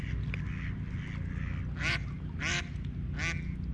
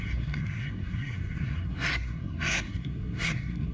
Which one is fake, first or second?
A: second